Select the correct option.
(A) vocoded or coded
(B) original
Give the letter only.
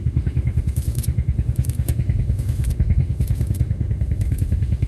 A